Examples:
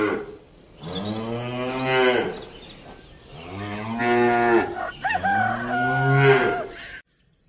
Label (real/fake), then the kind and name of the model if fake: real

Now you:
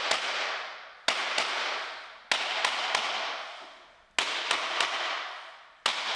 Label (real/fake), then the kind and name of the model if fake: real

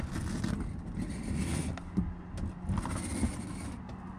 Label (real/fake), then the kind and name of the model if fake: real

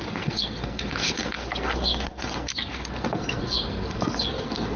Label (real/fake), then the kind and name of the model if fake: fake, codec, SNAC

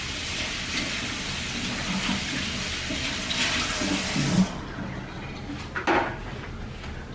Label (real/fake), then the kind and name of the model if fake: real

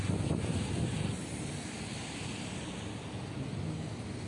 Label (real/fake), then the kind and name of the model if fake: real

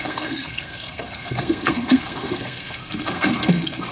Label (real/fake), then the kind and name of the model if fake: fake, codec, SNAC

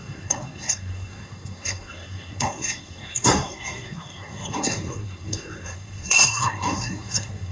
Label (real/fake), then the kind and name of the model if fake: fake, codec, SNAC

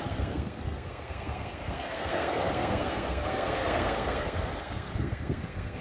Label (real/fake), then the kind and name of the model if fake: fake, codec, SNAC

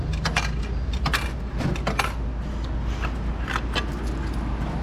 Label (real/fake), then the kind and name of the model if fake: real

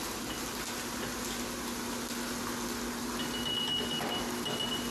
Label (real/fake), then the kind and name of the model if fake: real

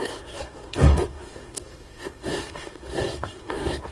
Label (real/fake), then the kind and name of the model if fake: fake, codec, SNAC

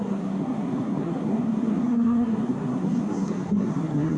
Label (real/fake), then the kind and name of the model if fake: fake, codec, SNAC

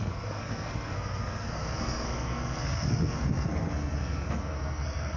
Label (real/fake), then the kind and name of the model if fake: fake, codec, SNAC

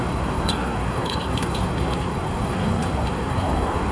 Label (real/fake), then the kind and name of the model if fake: fake, codec, SNAC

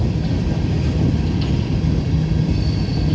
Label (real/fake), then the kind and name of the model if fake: real